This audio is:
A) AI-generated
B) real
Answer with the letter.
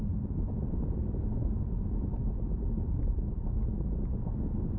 B